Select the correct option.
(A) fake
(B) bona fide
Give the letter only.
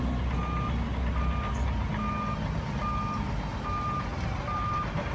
B